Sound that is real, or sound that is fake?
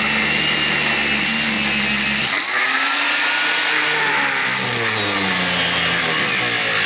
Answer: real